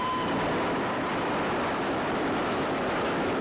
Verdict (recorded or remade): recorded